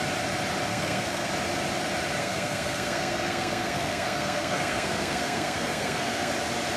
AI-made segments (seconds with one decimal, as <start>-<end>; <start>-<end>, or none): 0.7-1.3; 2.2-6.3